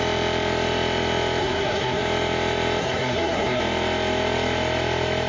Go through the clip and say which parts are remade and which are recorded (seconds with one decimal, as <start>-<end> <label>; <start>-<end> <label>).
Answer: 0.0-1.4 recorded; 1.4-2.0 remade; 2.0-2.8 recorded; 2.8-3.6 remade; 3.6-5.3 recorded